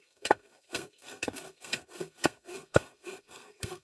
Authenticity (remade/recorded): remade